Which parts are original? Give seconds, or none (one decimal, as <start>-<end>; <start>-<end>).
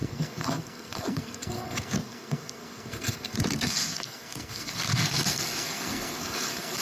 none